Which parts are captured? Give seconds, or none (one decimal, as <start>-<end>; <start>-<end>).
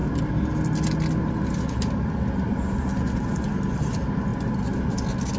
0.0-5.4